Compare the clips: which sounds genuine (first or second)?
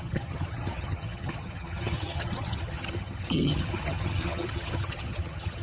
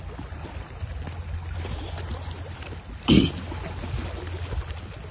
second